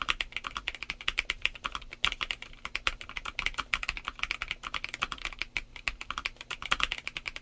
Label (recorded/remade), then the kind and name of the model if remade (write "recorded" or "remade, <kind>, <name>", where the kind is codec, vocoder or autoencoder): recorded